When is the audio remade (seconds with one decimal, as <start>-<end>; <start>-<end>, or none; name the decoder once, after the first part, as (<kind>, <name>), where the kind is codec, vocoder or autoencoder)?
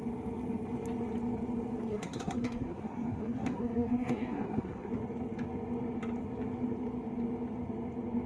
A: 1.9-4.9 (codec, SNAC)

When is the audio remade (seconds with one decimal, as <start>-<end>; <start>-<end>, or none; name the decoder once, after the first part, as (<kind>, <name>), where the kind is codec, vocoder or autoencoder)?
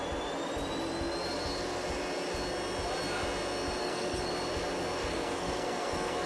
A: 3.8-4.3 (codec, SNAC); 5.0-6.3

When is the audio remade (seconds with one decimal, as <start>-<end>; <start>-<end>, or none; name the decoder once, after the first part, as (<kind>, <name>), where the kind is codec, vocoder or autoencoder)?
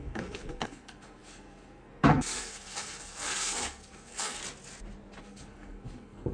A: 0.0-4.4 (codec, SNAC); 5.2-6.3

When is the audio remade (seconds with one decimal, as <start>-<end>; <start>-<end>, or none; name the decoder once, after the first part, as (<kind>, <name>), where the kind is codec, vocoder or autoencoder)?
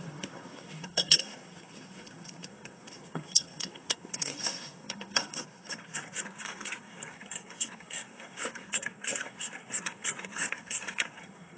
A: 0.0-11.6 (codec, SNAC)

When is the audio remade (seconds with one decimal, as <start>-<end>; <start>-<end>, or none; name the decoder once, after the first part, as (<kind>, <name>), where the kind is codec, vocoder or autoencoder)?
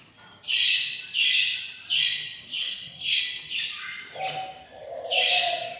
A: 2.6-3.2 (codec, SNAC)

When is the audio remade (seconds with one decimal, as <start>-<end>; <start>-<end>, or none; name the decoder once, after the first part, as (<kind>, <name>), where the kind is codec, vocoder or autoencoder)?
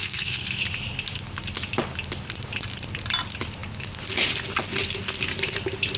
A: 0.0-0.6 (codec, SNAC)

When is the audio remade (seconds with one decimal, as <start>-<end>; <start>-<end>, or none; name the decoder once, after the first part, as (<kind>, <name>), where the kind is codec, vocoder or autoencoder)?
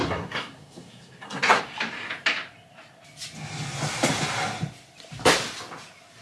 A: 0.0-1.6 (codec, SNAC)